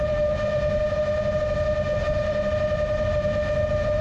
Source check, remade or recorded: recorded